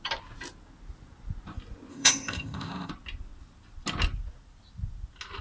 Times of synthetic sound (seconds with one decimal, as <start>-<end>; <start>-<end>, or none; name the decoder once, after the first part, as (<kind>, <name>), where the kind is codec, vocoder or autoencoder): 1.9-2.9 (codec, ZipCodec)